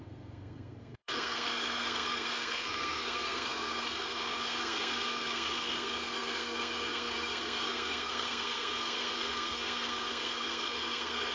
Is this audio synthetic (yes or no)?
yes